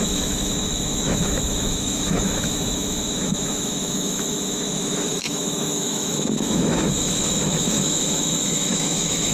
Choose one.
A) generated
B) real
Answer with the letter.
A